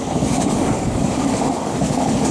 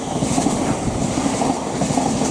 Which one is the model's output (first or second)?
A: first